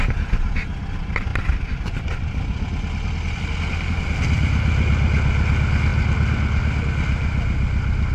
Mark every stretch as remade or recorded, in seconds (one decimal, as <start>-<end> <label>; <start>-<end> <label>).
0.0-8.1 recorded